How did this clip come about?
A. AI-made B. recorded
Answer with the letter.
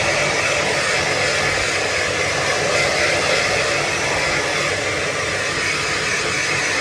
B